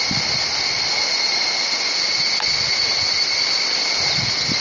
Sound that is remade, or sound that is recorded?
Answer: recorded